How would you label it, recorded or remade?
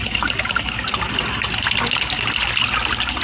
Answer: recorded